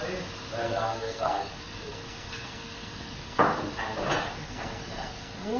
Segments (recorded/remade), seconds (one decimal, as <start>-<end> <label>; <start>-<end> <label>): 0.0-0.6 recorded; 0.6-3.4 remade; 3.4-4.2 recorded; 4.2-5.6 remade

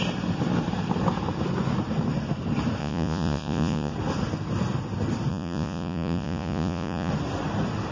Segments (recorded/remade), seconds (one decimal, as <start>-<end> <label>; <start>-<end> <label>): 0.0-2.8 recorded; 2.8-3.9 remade; 3.9-5.3 recorded; 5.3-7.1 remade; 7.1-7.9 recorded

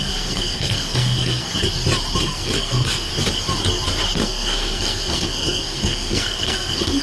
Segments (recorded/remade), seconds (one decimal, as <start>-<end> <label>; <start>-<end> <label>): 0.0-1.5 remade; 1.5-2.2 recorded; 2.2-3.1 remade; 3.1-4.2 recorded; 4.2-7.0 remade

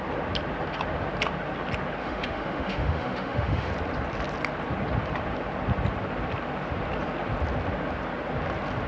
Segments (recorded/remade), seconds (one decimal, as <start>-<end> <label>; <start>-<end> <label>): 0.0-2.0 recorded; 2.0-3.7 remade; 3.7-8.9 recorded

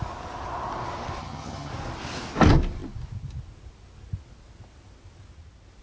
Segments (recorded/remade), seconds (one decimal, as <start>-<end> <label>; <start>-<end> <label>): 0.0-1.2 recorded; 1.2-1.7 remade; 1.7-5.8 recorded

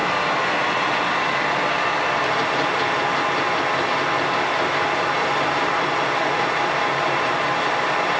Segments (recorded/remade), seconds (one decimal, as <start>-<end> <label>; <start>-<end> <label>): 0.0-8.2 recorded

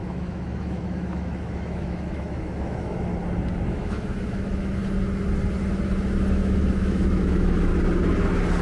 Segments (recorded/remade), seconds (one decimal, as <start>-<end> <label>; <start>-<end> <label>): 0.0-3.1 remade; 3.1-3.7 recorded; 3.7-4.8 remade; 4.8-6.3 recorded; 6.3-7.7 remade; 7.7-8.6 recorded

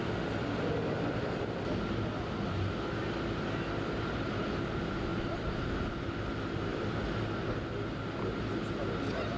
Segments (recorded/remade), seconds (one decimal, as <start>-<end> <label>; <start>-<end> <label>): 0.0-5.1 recorded; 5.1-5.8 remade; 5.8-6.7 recorded; 6.7-7.7 remade; 7.7-9.4 recorded